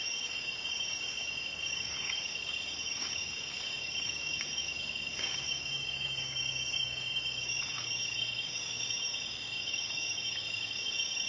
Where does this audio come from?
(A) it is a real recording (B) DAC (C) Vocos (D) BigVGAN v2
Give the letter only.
B